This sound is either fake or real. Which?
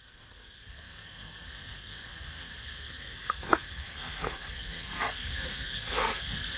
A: fake